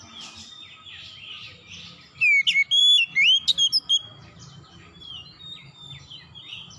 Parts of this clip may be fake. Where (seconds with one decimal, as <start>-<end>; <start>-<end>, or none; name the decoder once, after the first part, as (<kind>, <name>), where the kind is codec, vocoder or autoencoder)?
none